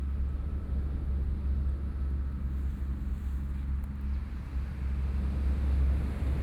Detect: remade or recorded recorded